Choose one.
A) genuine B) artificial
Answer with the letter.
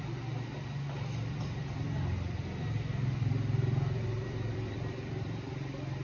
B